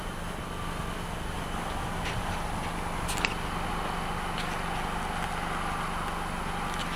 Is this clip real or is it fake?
real